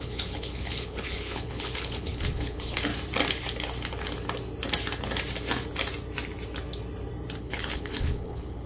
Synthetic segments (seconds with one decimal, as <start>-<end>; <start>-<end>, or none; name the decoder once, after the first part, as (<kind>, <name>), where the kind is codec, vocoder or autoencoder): 0.0-2.9 (codec, HILCodec); 7.4-8.7